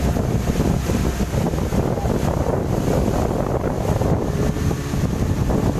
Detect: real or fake fake